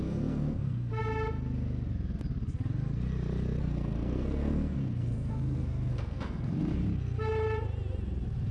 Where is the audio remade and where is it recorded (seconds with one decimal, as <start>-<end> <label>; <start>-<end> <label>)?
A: 0.0-1.0 remade; 1.0-3.6 recorded; 3.6-6.8 remade; 6.8-8.5 recorded